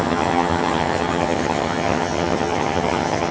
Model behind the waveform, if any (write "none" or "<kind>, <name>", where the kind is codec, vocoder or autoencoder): vocoder, HiFi-GAN